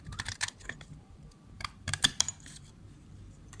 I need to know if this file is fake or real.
fake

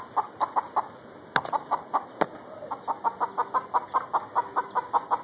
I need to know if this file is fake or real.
real